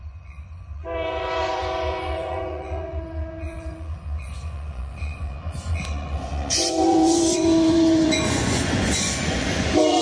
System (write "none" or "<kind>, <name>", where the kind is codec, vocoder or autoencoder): vocoder, Vocos